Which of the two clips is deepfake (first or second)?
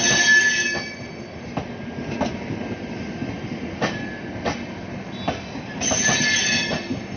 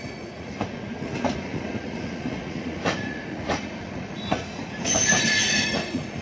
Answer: second